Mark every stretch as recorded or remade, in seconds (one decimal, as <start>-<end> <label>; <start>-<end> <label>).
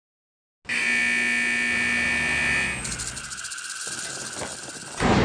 0.0-5.2 recorded